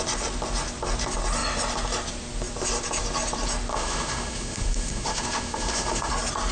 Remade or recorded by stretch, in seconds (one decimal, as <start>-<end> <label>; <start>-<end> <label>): 0.0-3.7 recorded; 3.7-6.1 remade; 6.1-6.5 recorded